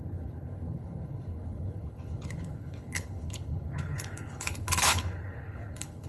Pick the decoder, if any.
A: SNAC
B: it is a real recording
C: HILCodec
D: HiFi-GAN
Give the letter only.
C